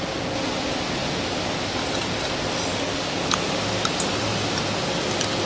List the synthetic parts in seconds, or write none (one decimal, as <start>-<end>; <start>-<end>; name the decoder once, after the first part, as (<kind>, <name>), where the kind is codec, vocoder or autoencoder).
2.7-3.3 (codec, DAC)

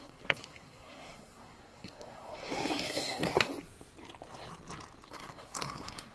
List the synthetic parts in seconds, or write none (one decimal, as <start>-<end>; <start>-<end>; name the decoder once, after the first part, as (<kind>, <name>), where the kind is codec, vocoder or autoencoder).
0.0-3.5 (codec, SNAC); 5.1-6.1